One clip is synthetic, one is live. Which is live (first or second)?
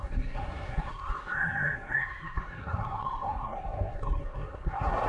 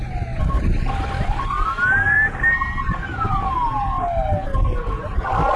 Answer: second